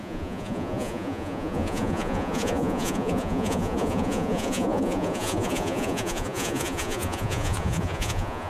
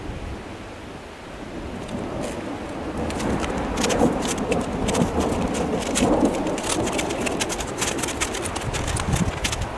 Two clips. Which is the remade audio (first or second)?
first